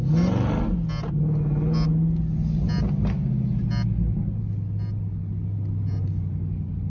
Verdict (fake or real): real